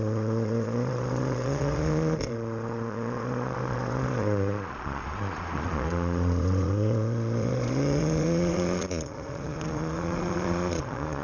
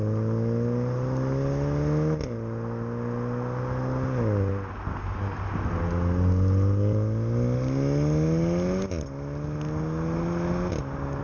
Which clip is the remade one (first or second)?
first